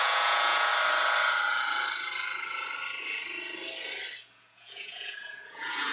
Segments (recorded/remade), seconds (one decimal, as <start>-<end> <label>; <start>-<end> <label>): 0.0-0.7 remade; 0.7-4.2 recorded; 4.2-5.9 remade